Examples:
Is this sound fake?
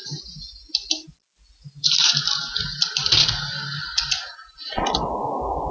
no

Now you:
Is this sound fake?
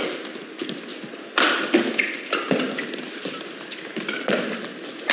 no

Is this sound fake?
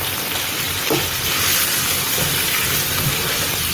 no